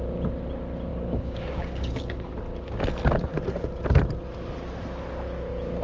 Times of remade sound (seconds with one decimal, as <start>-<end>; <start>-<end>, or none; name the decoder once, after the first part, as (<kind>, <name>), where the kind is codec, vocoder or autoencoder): 0.9-2.3 (codec, DAC)